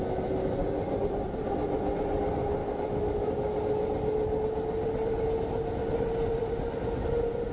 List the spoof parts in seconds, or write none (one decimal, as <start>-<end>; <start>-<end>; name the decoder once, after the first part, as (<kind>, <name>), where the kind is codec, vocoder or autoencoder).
2.6-3.3 (autoencoder, DAC-VAE)